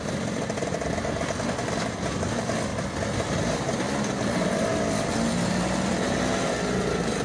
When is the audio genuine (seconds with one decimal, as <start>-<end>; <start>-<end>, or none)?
0.0-7.2